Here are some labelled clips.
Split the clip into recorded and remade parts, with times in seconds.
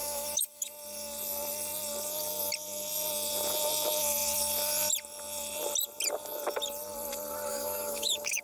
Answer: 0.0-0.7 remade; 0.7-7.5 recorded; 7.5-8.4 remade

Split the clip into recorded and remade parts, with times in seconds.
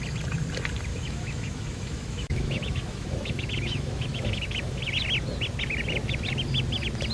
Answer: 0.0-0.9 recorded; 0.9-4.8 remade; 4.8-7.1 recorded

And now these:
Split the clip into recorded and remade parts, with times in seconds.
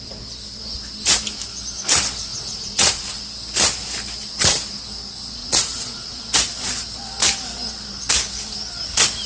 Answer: 0.0-2.3 recorded; 2.3-3.0 remade; 3.0-5.4 recorded; 5.4-6.2 remade; 6.2-9.3 recorded